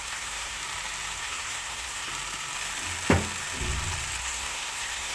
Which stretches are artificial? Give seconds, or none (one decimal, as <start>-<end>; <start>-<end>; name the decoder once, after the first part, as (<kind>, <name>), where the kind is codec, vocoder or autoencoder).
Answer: 0.0-0.6 (codec, SNAC); 1.2-2.1; 4.2-5.1